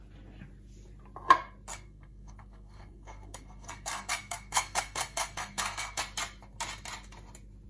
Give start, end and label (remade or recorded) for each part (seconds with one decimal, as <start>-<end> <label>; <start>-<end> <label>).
0.0-1.7 recorded; 1.7-6.0 remade; 6.0-7.7 recorded